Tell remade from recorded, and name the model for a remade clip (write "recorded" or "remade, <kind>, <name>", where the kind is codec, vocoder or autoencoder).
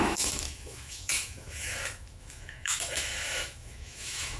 remade, autoencoder, DAC-VAE